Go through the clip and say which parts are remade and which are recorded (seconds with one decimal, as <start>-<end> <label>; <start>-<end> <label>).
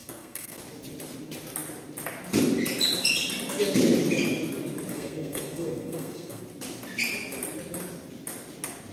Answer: 0.0-0.6 remade; 0.6-4.9 recorded; 4.9-6.4 remade; 6.4-8.9 recorded